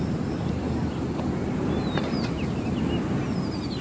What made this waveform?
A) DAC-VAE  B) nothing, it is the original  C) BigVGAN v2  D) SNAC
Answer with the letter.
B